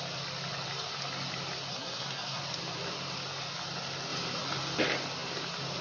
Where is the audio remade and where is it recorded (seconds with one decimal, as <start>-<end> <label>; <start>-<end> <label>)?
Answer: 0.0-1.7 recorded; 1.7-2.4 remade; 2.4-5.8 recorded